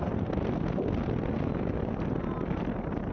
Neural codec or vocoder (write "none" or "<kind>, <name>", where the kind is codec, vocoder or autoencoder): none